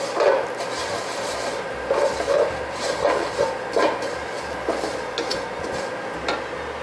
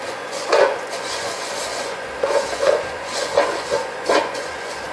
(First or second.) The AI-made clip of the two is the second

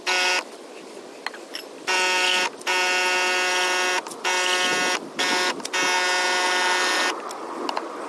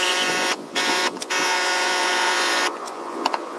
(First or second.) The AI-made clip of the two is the second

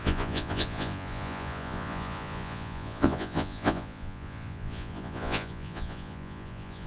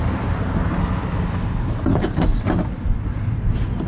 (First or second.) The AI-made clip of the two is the first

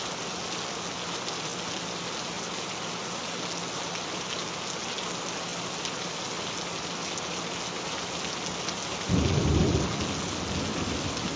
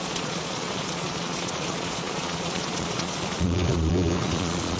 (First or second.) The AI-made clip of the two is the second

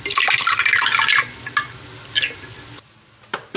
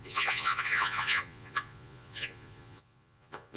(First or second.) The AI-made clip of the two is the second